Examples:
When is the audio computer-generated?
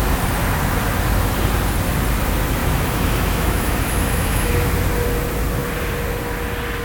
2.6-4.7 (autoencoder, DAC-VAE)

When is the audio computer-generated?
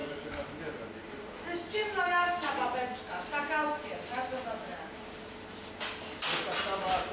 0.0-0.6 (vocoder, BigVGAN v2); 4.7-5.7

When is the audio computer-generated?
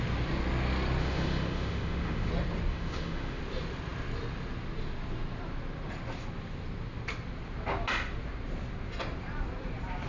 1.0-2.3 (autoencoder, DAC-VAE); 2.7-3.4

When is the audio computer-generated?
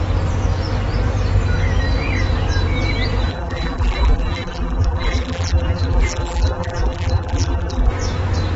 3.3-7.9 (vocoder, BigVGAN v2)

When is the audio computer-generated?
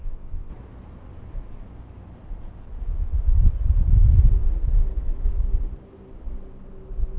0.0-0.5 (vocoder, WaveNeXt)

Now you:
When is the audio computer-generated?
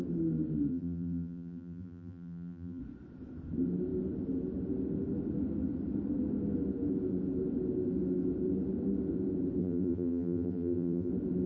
0.7-2.8 (vocoder, BigVGAN v2); 9.6-11.1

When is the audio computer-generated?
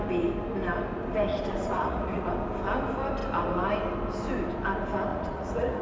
1.3-2.3 (vocoder, Vocos); 5.1-5.8